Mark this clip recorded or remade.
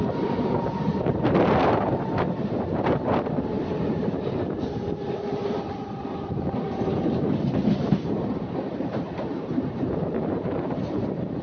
remade